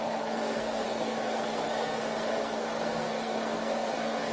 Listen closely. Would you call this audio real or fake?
fake